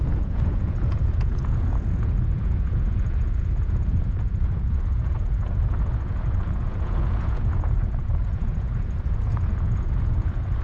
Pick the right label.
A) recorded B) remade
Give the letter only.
B